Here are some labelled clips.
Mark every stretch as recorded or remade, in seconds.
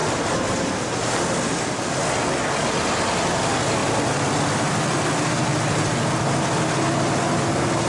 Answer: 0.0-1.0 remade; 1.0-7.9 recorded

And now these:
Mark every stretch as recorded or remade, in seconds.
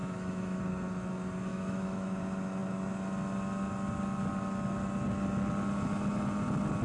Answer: 0.0-0.6 remade; 0.6-1.5 recorded; 1.5-2.2 remade; 2.2-6.8 recorded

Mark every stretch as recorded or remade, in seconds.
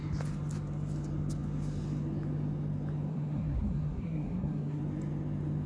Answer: 0.0-3.1 recorded; 3.1-4.8 remade; 4.8-5.7 recorded